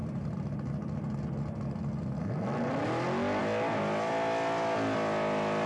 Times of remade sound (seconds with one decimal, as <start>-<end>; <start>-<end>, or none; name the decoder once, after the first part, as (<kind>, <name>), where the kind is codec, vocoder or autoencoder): none